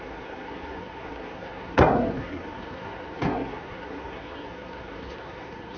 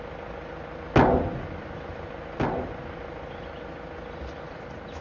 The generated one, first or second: first